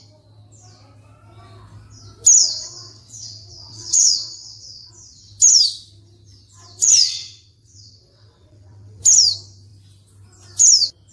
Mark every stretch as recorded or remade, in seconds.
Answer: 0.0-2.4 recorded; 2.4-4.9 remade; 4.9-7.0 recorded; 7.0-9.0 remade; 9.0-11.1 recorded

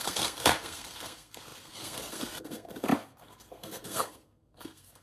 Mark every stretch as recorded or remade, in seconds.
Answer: 0.0-5.0 remade

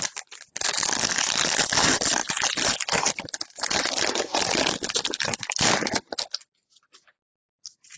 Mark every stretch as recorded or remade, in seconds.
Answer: 0.0-2.2 recorded; 2.2-5.6 remade; 5.6-8.0 recorded